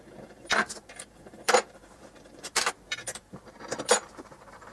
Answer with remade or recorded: remade